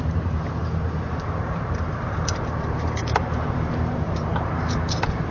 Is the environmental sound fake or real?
fake